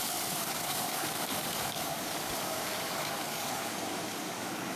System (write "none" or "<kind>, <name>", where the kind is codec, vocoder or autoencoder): codec, DAC